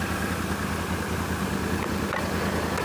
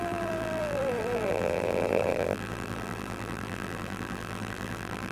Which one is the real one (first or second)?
first